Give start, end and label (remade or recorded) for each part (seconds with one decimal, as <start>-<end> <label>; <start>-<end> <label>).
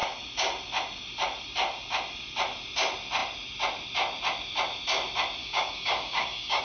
0.0-5.4 recorded; 5.4-6.6 remade